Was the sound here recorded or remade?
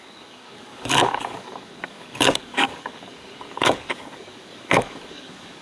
remade